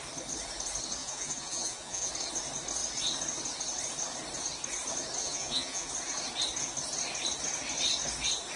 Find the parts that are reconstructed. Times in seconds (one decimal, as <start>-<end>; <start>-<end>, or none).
1.0-2.1; 5.2-5.9